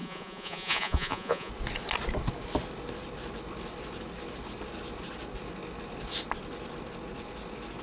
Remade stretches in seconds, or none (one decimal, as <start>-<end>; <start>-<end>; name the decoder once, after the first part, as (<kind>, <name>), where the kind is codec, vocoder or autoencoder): 0.0-1.5 (vocoder, Vocos)